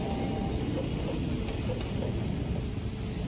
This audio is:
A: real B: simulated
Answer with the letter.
A